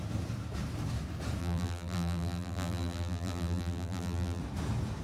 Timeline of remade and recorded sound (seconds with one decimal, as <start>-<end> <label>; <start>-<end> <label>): 0.0-1.4 recorded; 1.4-4.4 remade; 4.4-5.0 recorded